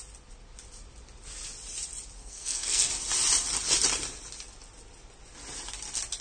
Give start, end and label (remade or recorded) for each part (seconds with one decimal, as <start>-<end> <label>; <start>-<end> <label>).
0.0-2.2 recorded; 2.2-2.9 remade; 2.9-6.2 recorded